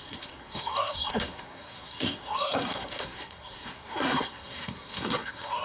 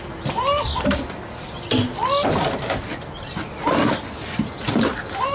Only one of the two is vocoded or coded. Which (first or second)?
first